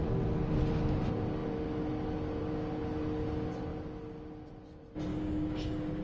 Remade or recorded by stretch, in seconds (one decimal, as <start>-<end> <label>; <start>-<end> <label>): 0.0-5.1 recorded; 5.1-6.0 remade